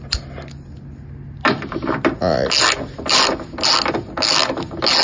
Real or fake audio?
real